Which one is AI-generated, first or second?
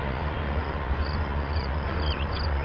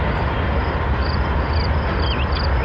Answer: first